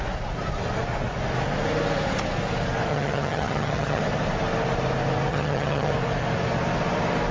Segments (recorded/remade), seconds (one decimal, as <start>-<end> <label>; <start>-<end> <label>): 0.0-2.9 recorded; 2.9-4.0 remade; 4.0-5.3 recorded; 5.3-5.9 remade; 5.9-7.3 recorded